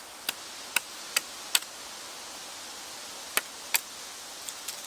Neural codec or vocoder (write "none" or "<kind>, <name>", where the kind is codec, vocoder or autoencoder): none